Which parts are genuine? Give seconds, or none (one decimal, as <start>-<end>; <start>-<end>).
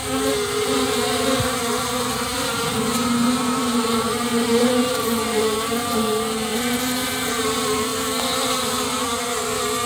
0.0-1.4; 6.5-7.4; 7.9-9.4